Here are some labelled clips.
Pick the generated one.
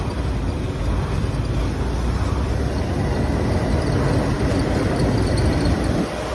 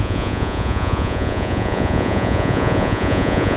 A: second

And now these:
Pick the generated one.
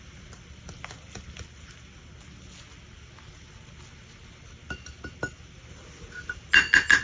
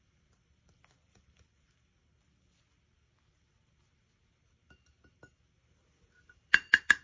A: second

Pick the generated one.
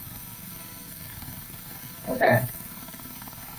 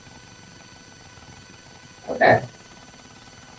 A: first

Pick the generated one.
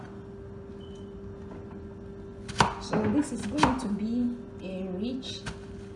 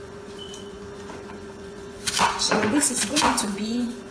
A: second